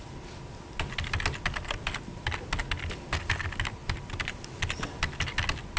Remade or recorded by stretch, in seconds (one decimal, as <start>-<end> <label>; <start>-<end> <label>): 0.0-3.8 recorded; 3.8-4.6 remade; 4.6-5.8 recorded